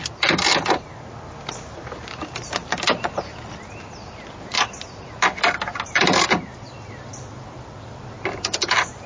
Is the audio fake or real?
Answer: real